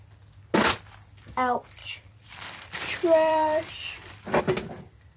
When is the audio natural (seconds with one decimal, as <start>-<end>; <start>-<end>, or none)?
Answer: 0.0-1.8; 4.4-5.2